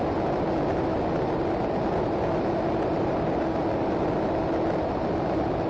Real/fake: real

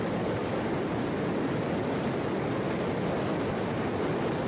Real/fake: real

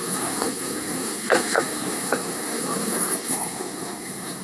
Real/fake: fake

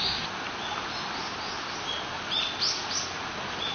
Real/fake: real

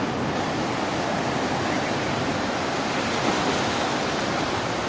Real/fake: real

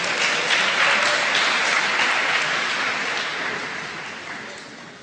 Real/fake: real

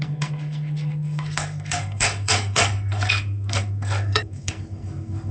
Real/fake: fake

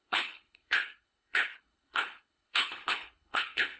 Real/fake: fake